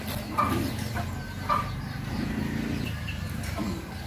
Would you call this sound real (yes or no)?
yes